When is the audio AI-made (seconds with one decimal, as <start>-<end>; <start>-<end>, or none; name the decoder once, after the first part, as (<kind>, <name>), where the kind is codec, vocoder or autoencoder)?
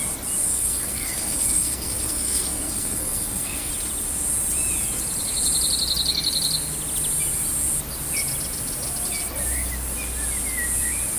0.4-3.7 (codec, SNAC)